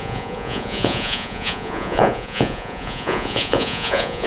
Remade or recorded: remade